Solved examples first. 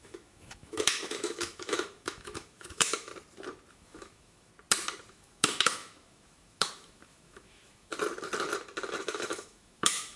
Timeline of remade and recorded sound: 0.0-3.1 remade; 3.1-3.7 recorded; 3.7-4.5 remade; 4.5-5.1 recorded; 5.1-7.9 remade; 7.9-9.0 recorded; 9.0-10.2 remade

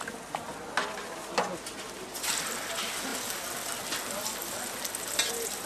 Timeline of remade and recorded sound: 0.0-5.7 recorded

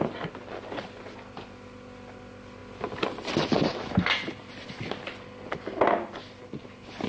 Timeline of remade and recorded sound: 0.0-7.1 recorded